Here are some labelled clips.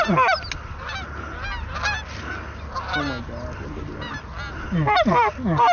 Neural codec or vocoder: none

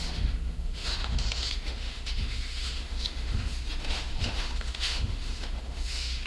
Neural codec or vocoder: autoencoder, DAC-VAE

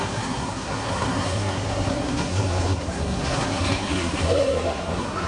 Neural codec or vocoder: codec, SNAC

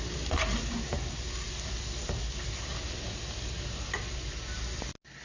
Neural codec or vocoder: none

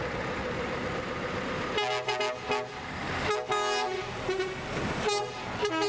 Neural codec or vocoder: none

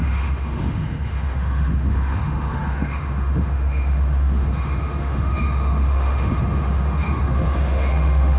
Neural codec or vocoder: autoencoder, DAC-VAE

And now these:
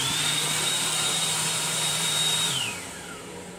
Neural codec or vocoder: vocoder, BigVGAN v2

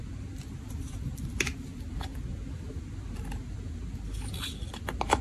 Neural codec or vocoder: none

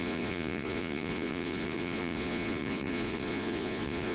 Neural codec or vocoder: vocoder, Vocos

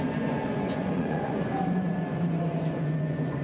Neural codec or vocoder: vocoder, Vocos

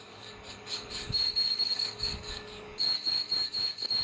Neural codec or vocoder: codec, DAC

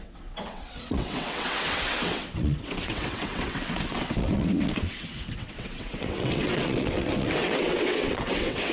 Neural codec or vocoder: vocoder, WaveNeXt